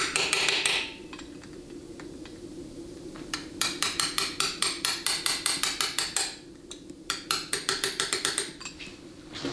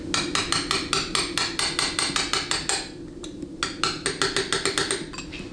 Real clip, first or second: second